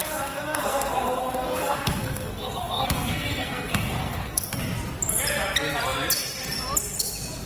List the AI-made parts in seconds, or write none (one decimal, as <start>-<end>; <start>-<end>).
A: 0.0-4.5

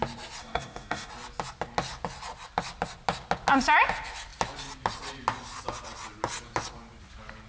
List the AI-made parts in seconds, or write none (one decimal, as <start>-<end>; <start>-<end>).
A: 0.4-1.1

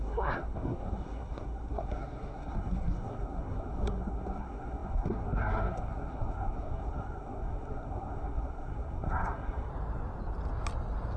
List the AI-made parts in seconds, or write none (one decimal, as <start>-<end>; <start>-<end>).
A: 0.0-9.7

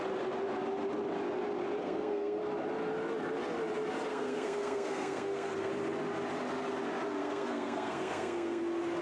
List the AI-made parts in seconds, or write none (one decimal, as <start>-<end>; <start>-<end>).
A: 1.8-2.4; 4.1-5.7; 7.2-8.6